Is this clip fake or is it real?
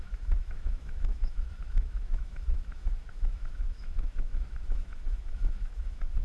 fake